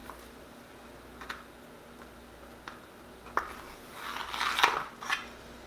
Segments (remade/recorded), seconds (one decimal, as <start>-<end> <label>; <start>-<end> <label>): 0.0-5.7 recorded